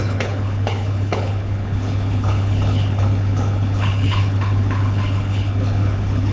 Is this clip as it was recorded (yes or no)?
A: no